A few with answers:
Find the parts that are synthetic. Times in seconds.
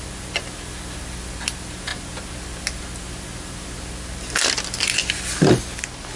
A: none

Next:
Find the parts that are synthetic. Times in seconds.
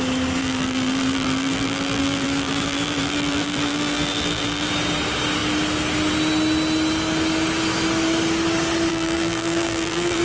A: 0.4-4.7; 8.9-10.2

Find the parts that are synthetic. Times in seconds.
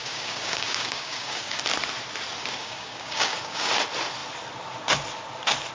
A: 0.0-1.6; 2.6-3.7